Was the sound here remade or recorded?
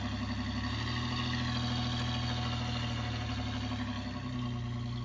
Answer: recorded